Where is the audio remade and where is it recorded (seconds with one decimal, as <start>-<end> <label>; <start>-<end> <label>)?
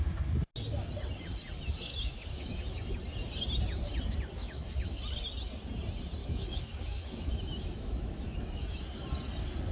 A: 0.0-1.9 recorded; 1.9-2.9 remade; 2.9-4.4 recorded; 4.4-5.0 remade; 5.0-6.2 recorded; 6.2-8.8 remade; 8.8-9.7 recorded